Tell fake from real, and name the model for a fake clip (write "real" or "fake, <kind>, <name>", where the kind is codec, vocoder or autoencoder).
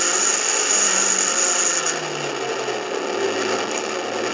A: real